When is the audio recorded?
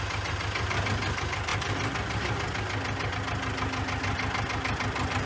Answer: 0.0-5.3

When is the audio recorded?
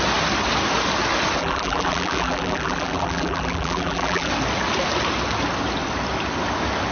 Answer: 0.0-1.4; 4.3-6.9